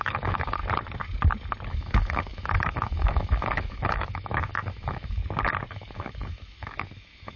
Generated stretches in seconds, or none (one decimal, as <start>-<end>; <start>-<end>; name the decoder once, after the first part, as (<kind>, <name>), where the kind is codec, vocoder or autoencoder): 0.0-0.6 (autoencoder, DAC-VAE); 1.7-5.2; 5.7-7.4